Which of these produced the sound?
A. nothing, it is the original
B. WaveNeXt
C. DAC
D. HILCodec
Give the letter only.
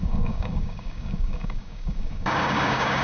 C